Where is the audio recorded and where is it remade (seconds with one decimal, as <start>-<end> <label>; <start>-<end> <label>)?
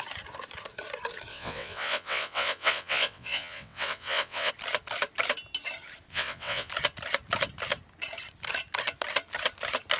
0.0-1.3 recorded; 1.3-4.5 remade; 4.5-6.1 recorded; 6.1-6.7 remade; 6.7-10.0 recorded